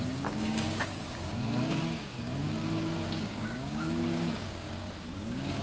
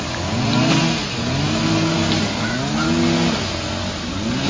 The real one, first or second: second